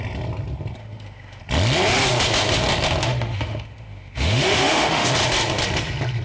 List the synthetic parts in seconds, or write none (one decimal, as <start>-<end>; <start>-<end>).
0.8-1.4; 3.0-5.1